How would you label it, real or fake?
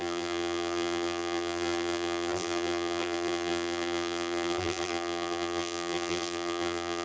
fake